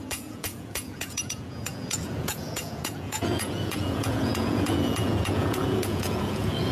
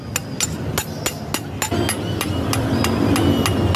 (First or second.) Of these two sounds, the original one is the second